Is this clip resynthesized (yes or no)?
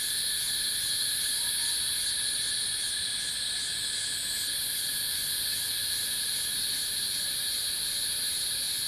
no